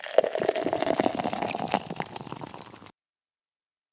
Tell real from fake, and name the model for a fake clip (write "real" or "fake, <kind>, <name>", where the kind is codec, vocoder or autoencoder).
real